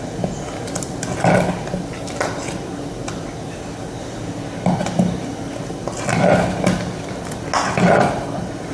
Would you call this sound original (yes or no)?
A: yes